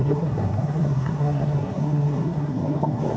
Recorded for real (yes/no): no